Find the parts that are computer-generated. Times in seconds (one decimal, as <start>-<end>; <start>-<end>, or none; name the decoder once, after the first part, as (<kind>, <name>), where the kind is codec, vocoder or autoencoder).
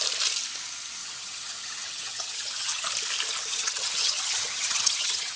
1.0-2.9 (vocoder, HiFi-GAN); 3.5-5.4